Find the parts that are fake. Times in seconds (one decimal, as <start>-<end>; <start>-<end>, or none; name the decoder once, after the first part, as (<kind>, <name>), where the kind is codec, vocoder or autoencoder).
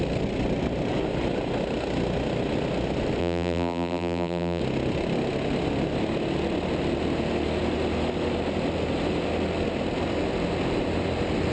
3.2-4.6 (vocoder, BigVGAN v2)